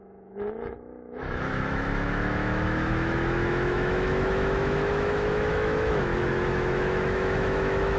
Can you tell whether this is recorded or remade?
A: remade